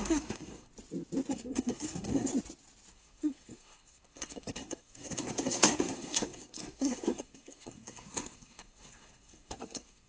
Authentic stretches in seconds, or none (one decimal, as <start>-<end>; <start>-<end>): 0.7-1.3; 2.3-2.9